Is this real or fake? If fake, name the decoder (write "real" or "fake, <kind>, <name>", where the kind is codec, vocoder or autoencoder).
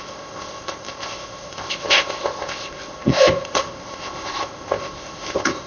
fake, codec, ZipCodec